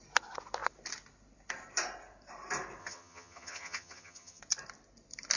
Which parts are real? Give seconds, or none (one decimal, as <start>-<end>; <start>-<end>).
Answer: 0.0-2.8; 4.4-5.4